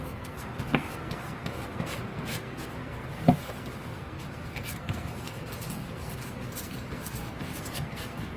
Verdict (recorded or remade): remade